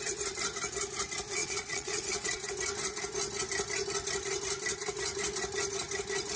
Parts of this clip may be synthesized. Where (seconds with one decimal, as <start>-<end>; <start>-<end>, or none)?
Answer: 1.4-2.5